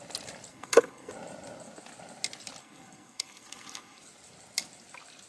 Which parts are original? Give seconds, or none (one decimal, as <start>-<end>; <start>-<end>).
0.0-0.5; 1.1-2.6; 4.0-5.3